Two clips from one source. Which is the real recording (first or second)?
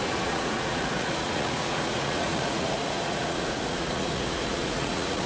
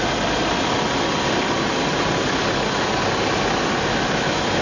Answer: second